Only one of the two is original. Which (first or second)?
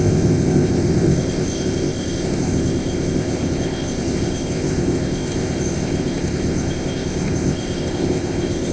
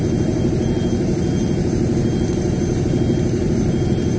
second